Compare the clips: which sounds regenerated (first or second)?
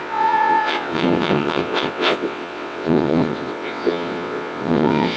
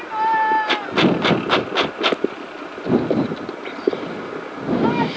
first